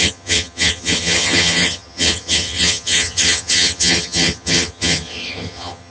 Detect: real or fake fake